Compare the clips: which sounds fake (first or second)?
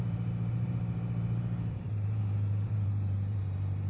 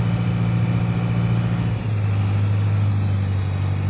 first